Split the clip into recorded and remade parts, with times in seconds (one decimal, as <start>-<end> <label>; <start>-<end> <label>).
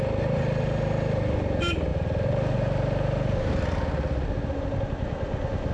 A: 0.0-5.7 recorded